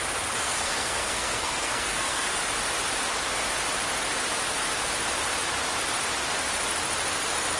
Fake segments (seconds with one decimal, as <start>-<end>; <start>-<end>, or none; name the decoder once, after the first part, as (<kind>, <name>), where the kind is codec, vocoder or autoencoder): 0.4-2.4 (codec, SNAC)